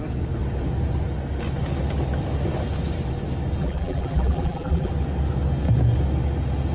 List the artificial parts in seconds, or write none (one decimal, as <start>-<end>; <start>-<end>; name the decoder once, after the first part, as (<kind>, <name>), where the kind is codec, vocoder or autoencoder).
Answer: 3.6-4.9 (vocoder, BigVGAN v2)